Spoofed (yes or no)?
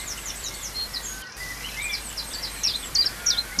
yes